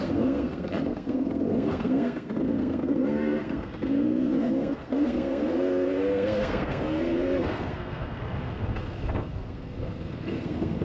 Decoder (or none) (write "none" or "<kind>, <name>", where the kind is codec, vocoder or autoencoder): codec, SNAC